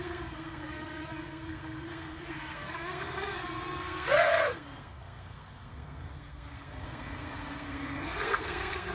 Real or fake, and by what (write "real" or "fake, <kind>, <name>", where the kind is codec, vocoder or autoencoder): fake, codec, SNAC